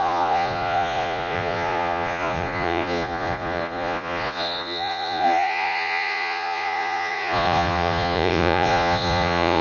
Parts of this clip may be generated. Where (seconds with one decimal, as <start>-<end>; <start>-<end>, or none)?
0.0-9.6